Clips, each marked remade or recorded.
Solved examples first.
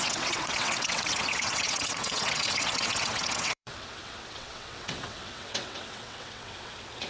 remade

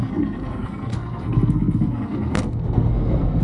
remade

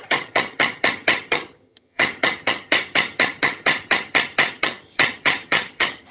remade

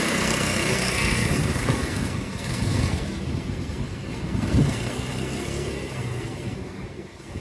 remade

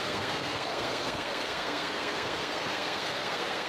remade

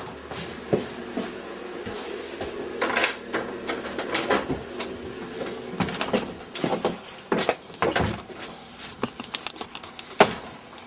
recorded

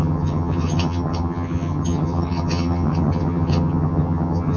remade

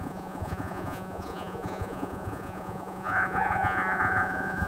remade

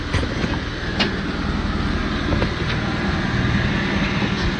recorded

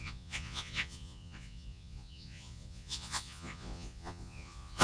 remade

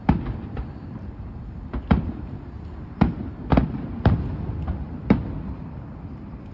recorded